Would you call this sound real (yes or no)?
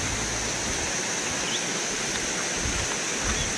yes